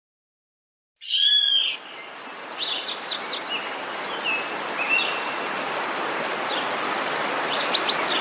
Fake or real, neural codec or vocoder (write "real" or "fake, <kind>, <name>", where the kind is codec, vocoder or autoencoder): real